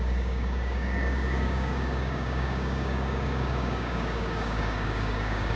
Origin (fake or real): fake